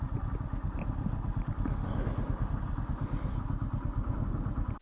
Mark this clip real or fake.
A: real